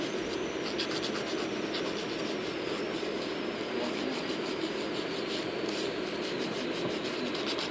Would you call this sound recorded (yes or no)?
yes